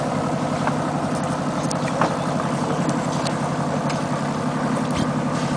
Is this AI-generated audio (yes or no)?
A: no